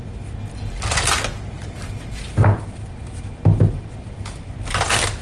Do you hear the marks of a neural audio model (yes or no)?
no